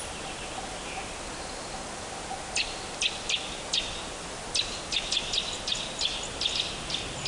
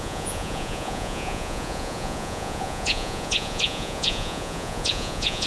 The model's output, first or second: second